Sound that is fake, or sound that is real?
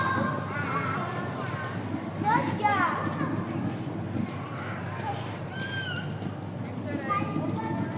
real